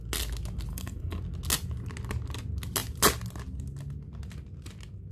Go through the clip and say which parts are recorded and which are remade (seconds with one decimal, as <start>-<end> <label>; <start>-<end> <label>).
0.0-0.7 recorded; 0.7-1.2 remade; 1.2-5.1 recorded